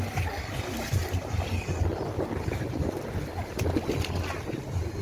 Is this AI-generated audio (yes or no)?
no